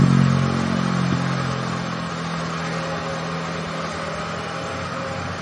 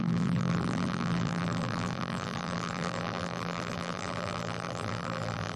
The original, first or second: first